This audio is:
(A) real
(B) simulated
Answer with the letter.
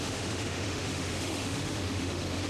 B